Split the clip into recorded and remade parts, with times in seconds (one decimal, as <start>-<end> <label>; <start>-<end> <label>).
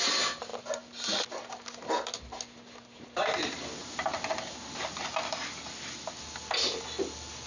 0.0-7.5 recorded